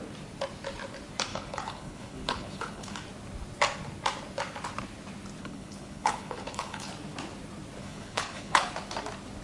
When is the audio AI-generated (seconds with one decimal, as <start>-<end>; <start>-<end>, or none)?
1.3-3.0; 5.4-6.9; 7.8-8.7